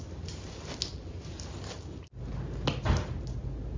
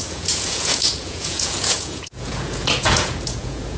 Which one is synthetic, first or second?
second